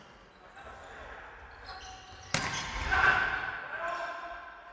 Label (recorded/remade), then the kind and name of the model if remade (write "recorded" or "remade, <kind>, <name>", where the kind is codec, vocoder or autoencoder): recorded